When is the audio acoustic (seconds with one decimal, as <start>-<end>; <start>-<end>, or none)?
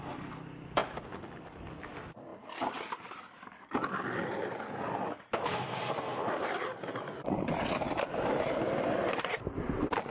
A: 0.0-10.1